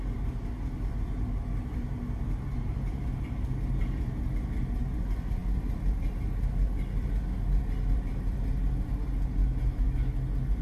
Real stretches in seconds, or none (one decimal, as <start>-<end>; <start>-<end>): 0.0-9.4; 10.1-10.6